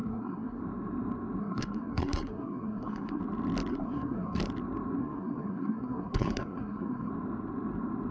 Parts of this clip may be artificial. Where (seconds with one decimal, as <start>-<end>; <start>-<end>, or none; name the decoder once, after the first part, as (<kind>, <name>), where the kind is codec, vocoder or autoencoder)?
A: 0.0-0.6 (codec, SNAC); 1.4-3.2; 3.7-4.4; 5.0-7.1